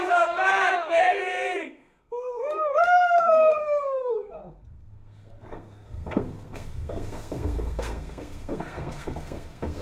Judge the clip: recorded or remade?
remade